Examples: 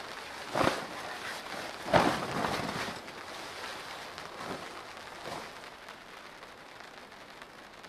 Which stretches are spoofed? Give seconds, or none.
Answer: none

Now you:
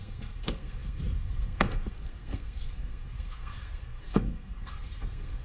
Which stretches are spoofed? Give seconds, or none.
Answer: 0.0-5.4 (codec, SNAC)

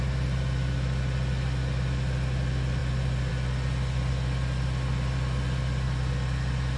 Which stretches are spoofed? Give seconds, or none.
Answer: none

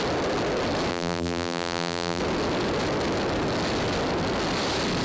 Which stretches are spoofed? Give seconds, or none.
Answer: 0.9-2.2 (vocoder, BigVGAN v2)

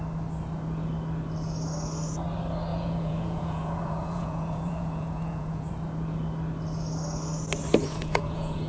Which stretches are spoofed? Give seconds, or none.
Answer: 2.7-5.7 (vocoder, Vocos); 7.8-8.7

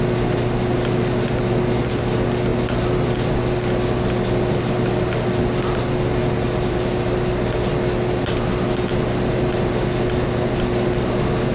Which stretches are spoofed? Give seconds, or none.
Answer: none

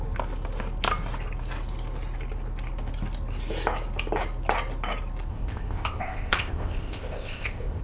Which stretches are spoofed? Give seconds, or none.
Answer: 5.3-7.8 (codec, ZipCodec)